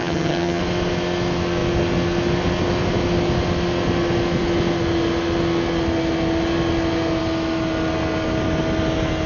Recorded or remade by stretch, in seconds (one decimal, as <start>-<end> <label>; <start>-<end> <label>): 0.0-0.6 remade; 0.6-9.3 recorded